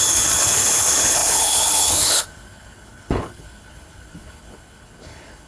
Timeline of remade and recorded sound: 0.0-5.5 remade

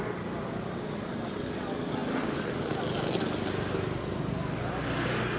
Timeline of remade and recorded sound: 0.0-5.4 recorded

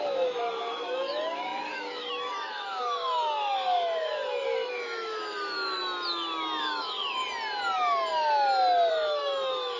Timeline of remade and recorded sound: 0.0-5.8 remade; 5.8-6.6 recorded; 6.6-7.2 remade; 7.2-8.9 recorded; 8.9-9.8 remade

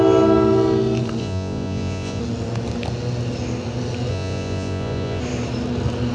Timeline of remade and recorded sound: 0.0-1.2 recorded; 1.2-2.2 remade; 2.2-4.1 recorded; 4.1-5.2 remade; 5.2-6.1 recorded

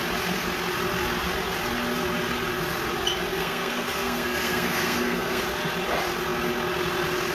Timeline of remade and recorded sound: 0.0-3.3 recorded; 3.3-5.4 remade; 5.4-7.3 recorded

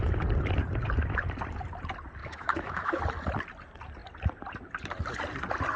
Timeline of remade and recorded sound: 0.0-2.2 recorded; 2.2-3.0 remade; 3.0-5.8 recorded